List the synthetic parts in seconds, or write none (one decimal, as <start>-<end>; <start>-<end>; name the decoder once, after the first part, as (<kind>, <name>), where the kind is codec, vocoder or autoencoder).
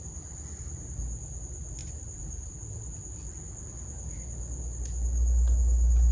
1.8-2.5 (vocoder, BigVGAN v2)